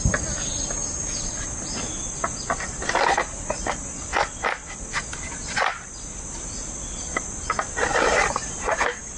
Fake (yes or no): no